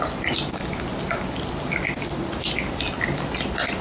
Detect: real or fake real